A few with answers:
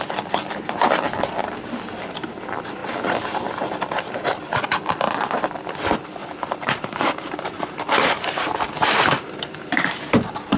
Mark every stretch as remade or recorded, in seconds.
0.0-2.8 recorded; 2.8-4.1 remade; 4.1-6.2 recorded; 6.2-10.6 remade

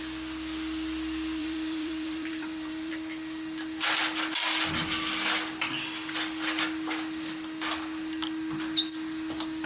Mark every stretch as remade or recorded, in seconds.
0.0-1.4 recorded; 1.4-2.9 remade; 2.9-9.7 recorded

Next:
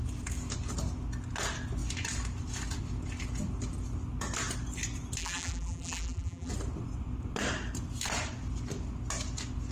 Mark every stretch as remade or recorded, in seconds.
0.0-5.2 recorded; 5.2-6.5 remade; 6.5-9.7 recorded